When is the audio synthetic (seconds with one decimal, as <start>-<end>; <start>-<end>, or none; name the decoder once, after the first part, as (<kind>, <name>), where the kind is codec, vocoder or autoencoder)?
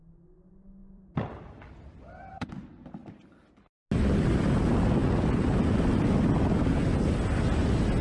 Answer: 0.8-2.5 (vocoder, BigVGAN v2)